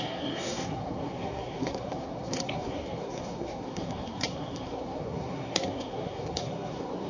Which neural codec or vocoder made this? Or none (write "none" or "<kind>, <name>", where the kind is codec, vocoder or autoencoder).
codec, SNAC